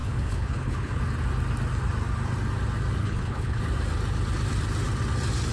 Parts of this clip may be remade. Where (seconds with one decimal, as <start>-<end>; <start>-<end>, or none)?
0.0-1.0; 3.0-3.6